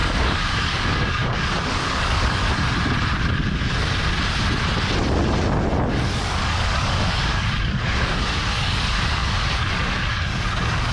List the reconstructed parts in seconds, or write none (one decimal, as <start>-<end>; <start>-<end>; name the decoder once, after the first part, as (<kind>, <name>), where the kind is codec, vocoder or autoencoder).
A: 0.0-2.4 (codec, DAC); 5.9-10.9